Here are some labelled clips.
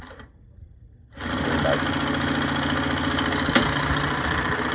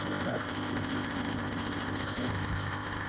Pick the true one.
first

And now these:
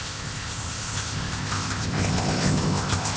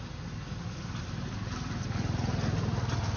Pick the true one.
second